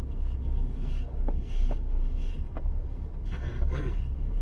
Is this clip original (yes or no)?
no